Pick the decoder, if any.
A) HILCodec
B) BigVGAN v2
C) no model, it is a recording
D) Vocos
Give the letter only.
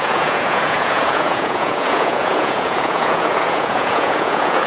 D